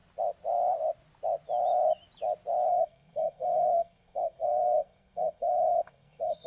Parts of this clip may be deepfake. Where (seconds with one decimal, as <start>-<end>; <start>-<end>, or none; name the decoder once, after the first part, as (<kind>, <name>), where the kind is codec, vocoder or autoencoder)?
2.7-6.5 (codec, SNAC)